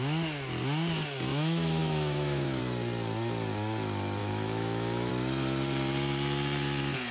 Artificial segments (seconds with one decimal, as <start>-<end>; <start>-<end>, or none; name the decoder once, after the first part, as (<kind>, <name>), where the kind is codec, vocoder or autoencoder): 1.3-2.6 (autoencoder, DAC-VAE); 4.2-5.1